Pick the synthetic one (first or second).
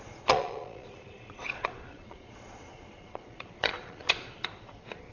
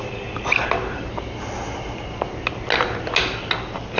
first